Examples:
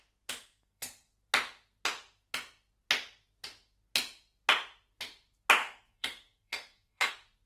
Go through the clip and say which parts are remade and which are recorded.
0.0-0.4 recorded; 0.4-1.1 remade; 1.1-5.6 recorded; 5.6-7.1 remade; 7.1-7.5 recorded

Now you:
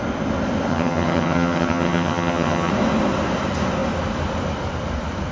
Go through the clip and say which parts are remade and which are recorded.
0.0-0.7 recorded; 0.7-2.7 remade; 2.7-5.3 recorded

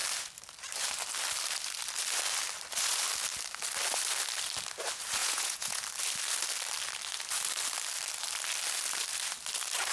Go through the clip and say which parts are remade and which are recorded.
0.0-5.2 recorded; 5.2-5.8 remade; 5.8-9.9 recorded

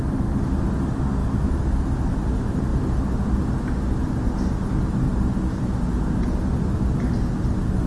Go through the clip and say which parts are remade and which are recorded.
0.0-7.9 recorded